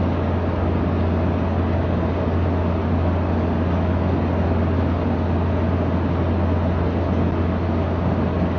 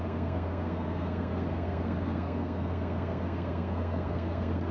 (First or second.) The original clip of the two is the first